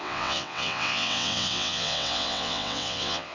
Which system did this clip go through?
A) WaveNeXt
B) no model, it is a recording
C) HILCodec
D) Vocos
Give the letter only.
A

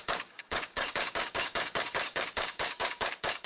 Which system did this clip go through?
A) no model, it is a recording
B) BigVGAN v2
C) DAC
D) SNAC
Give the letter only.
C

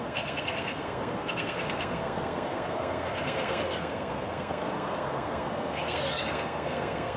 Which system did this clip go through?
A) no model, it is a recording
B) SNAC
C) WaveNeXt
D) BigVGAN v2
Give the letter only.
B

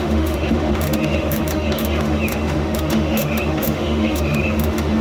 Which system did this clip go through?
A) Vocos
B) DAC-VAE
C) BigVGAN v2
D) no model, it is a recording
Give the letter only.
B